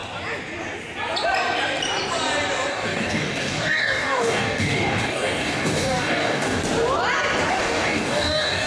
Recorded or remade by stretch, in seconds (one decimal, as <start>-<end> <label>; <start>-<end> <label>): 0.0-2.7 recorded; 2.7-6.6 remade; 6.6-7.5 recorded; 7.5-8.7 remade